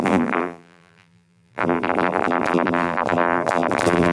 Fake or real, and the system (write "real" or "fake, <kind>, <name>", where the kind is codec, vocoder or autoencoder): fake, vocoder, BigVGAN v2